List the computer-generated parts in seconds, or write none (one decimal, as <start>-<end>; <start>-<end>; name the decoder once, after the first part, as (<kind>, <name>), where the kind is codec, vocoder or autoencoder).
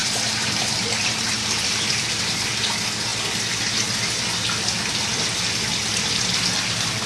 0.0-2.6 (vocoder, BigVGAN v2)